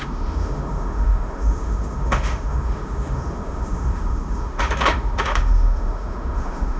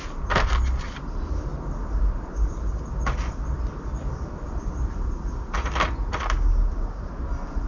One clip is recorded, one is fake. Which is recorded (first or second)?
second